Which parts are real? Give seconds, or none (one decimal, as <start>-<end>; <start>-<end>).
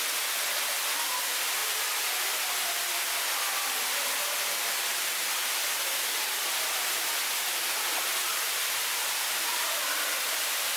0.0-8.3; 9.6-10.8